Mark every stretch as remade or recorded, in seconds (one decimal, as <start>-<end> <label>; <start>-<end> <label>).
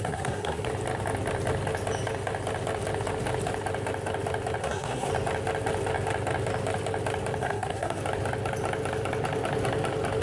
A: 0.0-0.7 remade; 0.7-4.6 recorded; 4.6-5.1 remade; 5.1-7.4 recorded; 7.4-8.0 remade; 8.0-10.2 recorded